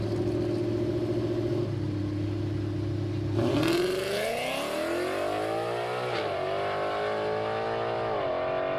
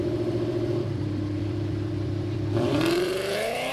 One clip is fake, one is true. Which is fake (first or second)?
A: second